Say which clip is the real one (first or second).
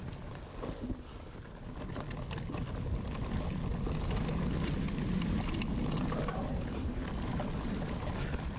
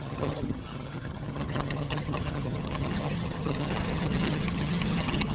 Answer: first